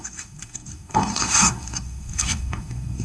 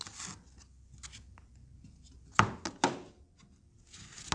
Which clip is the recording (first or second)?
second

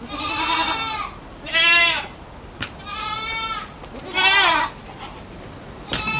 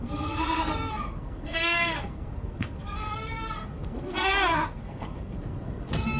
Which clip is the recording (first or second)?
first